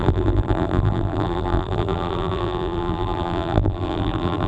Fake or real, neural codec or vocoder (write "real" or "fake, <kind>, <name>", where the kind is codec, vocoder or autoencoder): fake, vocoder, BigVGAN v2